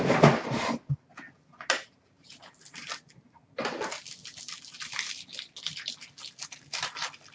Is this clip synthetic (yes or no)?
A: no